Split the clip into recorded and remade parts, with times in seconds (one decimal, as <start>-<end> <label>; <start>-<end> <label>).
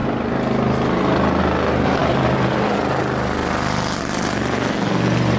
0.0-5.4 recorded